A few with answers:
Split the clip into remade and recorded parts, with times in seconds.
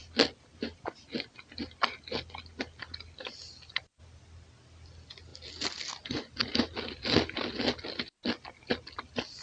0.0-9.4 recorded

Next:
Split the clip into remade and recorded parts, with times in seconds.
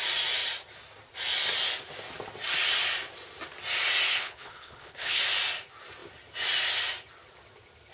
0.0-4.1 recorded; 4.1-5.2 remade; 5.2-7.9 recorded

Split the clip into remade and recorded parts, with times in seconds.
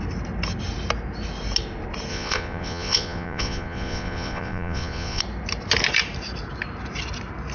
0.0-2.1 recorded; 2.1-5.2 remade; 5.2-7.5 recorded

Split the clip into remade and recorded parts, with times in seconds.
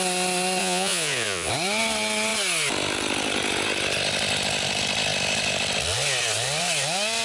0.0-0.6 recorded; 0.6-1.5 remade; 1.5-7.2 recorded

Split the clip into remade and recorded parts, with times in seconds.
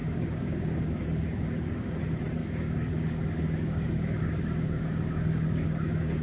0.0-1.9 remade; 1.9-2.4 recorded; 2.4-6.2 remade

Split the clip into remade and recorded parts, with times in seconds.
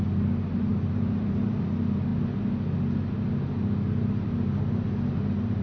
0.0-0.7 recorded; 0.7-1.4 remade; 1.4-5.6 recorded